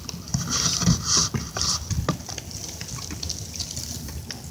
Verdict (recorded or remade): recorded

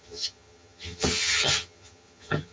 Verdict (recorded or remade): remade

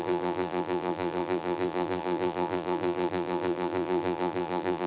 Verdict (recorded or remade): remade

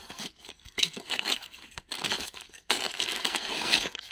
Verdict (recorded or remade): remade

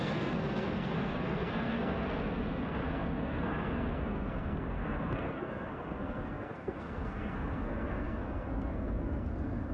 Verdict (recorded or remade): remade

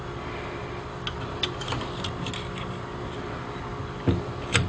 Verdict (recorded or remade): recorded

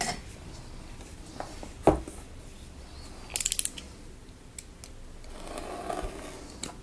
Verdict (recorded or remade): recorded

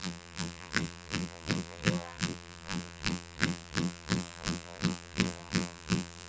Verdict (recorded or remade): remade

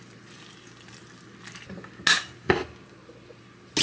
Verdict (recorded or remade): recorded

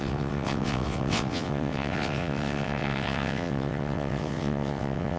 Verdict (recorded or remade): remade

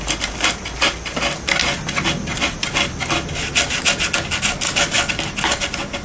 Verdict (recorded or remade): recorded